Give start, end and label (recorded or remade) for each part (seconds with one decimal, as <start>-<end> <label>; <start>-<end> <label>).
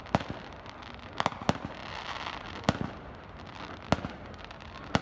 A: 0.0-5.0 recorded